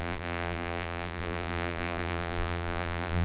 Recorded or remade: remade